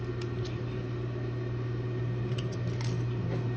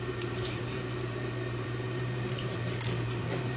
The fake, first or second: second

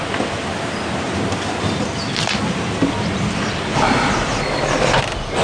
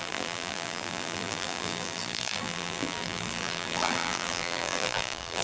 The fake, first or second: second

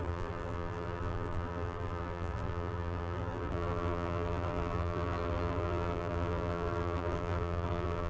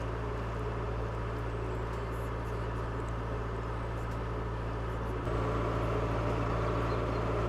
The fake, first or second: first